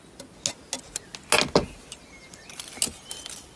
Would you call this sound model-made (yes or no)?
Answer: no